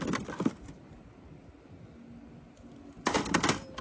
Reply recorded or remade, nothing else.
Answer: recorded